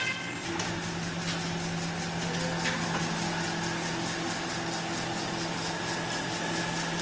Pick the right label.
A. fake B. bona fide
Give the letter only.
B